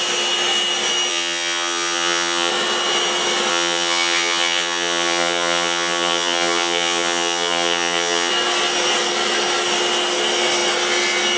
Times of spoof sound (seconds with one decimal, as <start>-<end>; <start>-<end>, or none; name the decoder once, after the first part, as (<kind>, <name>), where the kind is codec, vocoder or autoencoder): 1.1-2.5 (vocoder, HiFi-GAN); 3.5-8.3